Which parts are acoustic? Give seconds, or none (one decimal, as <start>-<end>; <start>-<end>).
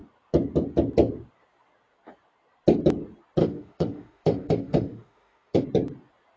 0.0-3.4; 5.6-6.4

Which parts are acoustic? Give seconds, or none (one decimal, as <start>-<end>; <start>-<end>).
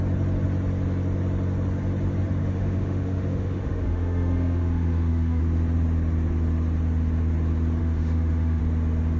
0.0-2.4; 5.4-7.8; 8.6-9.2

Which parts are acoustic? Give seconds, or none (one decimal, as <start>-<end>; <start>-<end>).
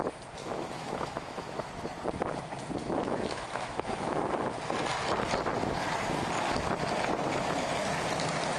0.0-0.4; 1.7-2.8; 4.3-8.6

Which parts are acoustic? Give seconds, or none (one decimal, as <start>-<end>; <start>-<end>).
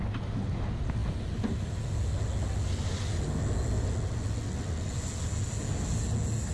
0.0-6.5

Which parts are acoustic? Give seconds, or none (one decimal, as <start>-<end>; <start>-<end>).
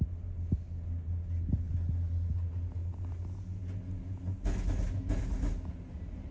0.0-6.3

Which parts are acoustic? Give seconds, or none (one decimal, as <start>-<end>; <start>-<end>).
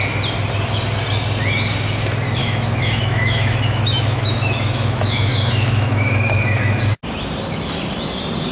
0.0-2.4; 6.8-8.5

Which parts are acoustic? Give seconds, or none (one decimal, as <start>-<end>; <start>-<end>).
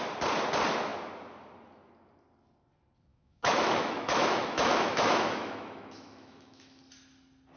0.0-3.1; 6.8-7.6